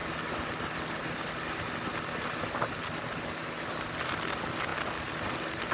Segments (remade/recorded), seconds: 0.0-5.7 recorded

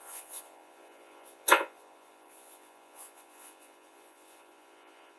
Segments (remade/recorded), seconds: 0.0-5.2 remade